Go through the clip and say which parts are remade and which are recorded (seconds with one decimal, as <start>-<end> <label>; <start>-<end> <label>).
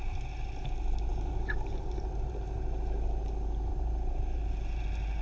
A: 0.0-1.1 recorded; 1.1-2.4 remade; 2.4-3.7 recorded; 3.7-5.2 remade